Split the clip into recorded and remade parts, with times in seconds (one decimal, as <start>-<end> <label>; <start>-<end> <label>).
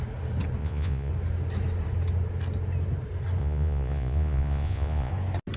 0.0-0.6 recorded; 0.6-1.1 remade; 1.1-3.4 recorded; 3.4-5.1 remade; 5.1-5.6 recorded